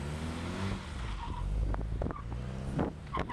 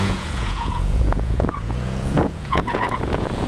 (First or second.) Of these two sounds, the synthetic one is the second